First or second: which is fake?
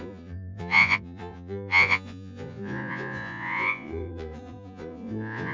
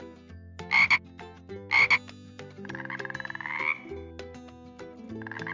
first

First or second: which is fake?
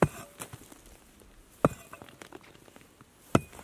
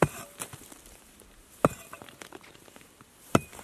second